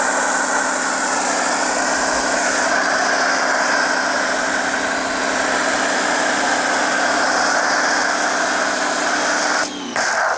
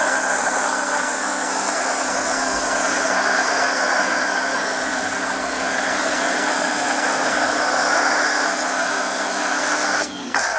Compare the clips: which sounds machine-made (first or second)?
second